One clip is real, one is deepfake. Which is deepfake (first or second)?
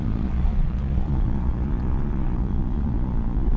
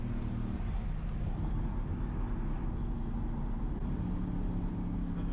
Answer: first